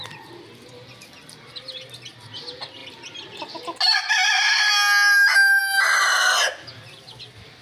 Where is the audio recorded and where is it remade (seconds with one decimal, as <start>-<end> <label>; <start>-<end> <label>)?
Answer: 0.0-7.6 recorded